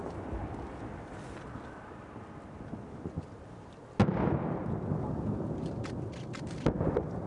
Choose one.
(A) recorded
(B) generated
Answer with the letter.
A